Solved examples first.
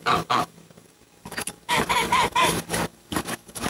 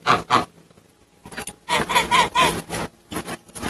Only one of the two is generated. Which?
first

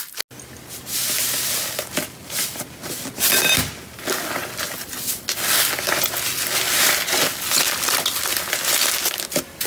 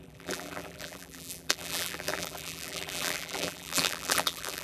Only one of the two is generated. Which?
second